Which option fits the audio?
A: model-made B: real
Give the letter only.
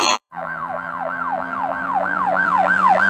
A